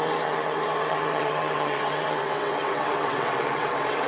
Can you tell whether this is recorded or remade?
remade